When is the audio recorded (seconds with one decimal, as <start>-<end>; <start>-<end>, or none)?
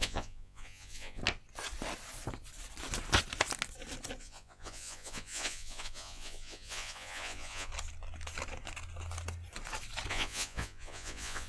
1.2-4.2; 7.7-10.1